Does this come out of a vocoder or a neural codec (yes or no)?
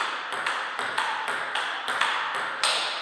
no